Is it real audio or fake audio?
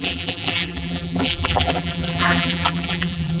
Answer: fake